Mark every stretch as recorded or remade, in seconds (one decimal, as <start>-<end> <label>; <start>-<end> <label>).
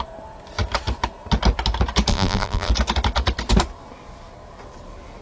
0.0-2.1 recorded; 2.1-2.7 remade; 2.7-5.2 recorded